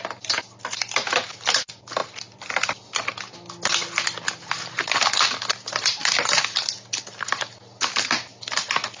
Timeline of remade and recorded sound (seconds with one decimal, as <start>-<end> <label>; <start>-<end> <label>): 0.0-9.0 recorded